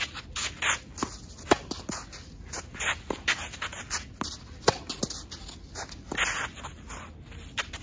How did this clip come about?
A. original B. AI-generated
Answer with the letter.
A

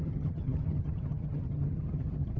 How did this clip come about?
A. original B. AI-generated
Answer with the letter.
B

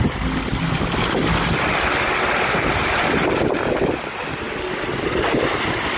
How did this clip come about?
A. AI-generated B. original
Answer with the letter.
B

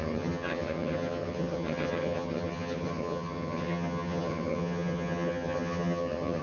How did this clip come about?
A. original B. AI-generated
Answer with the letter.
B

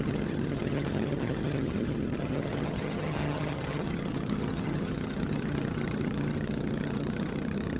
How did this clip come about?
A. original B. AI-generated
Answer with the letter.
B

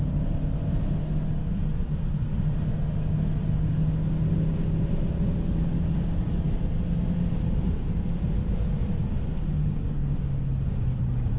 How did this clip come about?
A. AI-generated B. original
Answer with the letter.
B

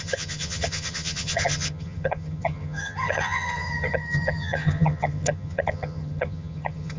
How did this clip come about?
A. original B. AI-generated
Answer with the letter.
B